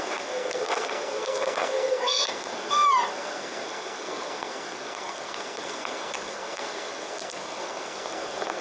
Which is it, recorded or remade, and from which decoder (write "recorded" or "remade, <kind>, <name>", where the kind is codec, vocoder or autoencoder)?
remade, codec, SNAC